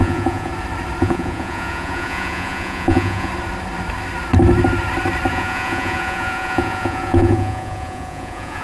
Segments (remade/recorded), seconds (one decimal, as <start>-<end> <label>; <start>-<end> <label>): 0.0-0.5 remade; 0.5-1.0 recorded; 1.0-3.3 remade; 3.3-5.3 recorded; 5.3-8.6 remade